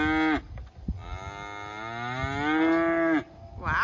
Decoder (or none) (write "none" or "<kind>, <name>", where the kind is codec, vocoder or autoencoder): none